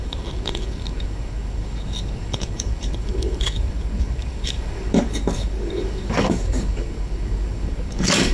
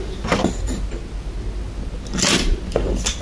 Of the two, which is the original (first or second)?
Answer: second